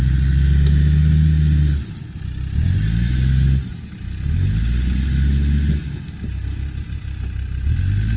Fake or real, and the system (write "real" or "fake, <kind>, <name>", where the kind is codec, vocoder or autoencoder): real